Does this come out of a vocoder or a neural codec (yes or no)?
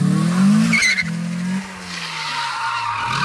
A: no